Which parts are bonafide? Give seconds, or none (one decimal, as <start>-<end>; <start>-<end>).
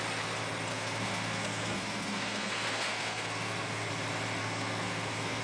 0.0-0.7; 3.9-4.4